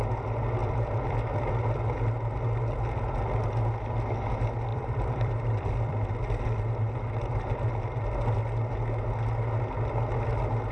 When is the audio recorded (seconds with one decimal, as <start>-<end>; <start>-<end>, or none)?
0.0-0.6; 1.5-4.7; 6.1-10.7